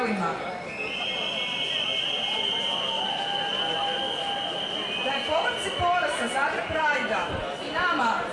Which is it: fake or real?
real